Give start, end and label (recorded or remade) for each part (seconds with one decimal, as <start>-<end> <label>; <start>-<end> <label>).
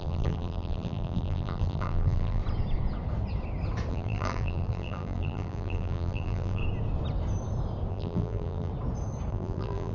0.0-2.4 remade; 2.4-3.9 recorded; 3.9-6.6 remade; 6.6-7.9 recorded; 7.9-8.7 remade; 8.7-9.3 recorded; 9.3-9.9 remade